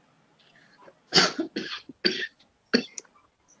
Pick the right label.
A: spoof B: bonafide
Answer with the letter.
B